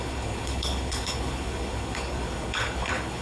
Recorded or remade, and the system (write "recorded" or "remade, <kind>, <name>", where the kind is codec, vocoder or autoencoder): remade, codec, HILCodec